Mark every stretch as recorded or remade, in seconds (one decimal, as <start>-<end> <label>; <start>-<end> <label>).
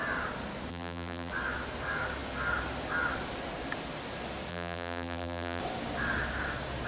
0.0-0.7 recorded; 0.7-1.3 remade; 1.3-4.5 recorded; 4.5-5.6 remade; 5.6-6.9 recorded